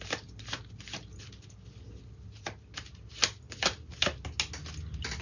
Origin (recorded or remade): recorded